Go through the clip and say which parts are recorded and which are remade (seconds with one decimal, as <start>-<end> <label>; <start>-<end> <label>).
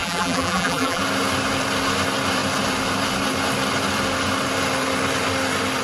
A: 0.0-1.0 remade; 1.0-5.8 recorded